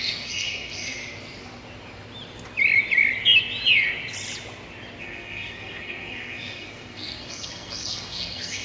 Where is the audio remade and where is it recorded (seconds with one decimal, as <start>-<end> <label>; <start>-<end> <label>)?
0.0-1.0 remade; 1.0-5.0 recorded; 5.0-8.6 remade